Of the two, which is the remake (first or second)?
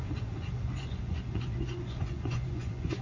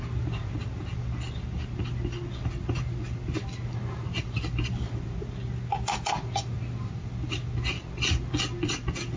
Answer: first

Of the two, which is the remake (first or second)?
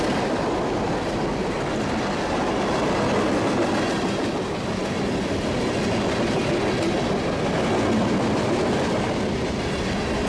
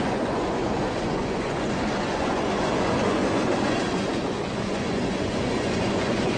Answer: second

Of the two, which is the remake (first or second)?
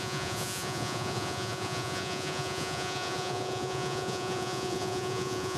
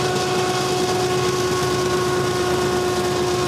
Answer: first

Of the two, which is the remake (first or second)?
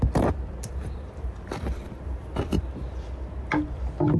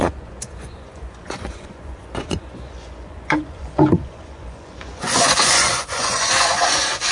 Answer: second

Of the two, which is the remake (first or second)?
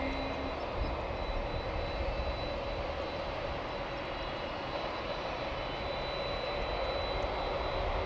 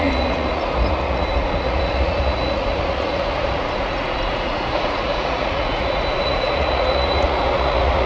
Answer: second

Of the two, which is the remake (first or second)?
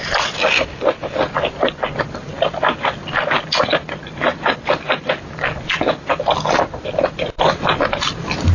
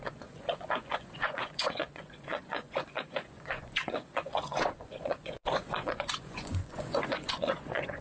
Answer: second